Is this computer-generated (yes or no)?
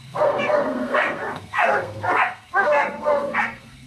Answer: yes